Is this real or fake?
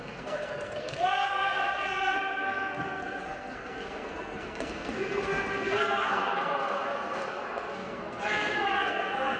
fake